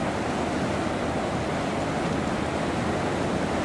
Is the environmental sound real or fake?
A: real